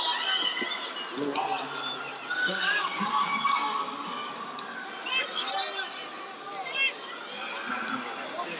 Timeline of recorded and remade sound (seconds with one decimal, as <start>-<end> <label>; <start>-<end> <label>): 0.0-2.4 recorded; 2.4-4.9 remade; 4.9-8.6 recorded